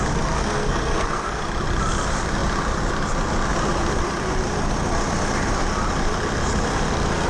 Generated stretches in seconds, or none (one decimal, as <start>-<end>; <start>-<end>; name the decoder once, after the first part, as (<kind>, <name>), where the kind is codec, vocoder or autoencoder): 0.4-1.4 (codec, SNAC)